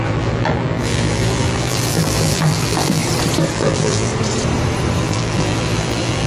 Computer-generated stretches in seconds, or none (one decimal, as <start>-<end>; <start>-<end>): 0.0-3.0; 3.5-4.1; 5.0-6.3